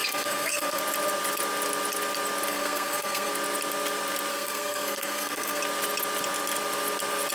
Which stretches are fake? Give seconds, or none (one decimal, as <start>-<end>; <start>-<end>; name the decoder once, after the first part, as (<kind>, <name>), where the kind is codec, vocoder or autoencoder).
0.0-0.8 (codec, SNAC); 2.5-3.3; 4.3-5.6